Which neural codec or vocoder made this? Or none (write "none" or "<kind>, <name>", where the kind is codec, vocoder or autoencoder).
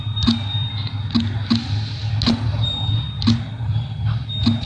none